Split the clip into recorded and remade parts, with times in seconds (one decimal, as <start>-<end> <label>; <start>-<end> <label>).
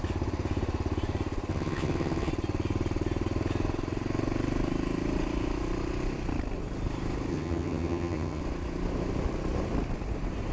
0.0-1.5 recorded; 1.5-2.3 remade; 2.3-7.3 recorded; 7.3-8.4 remade; 8.4-10.5 recorded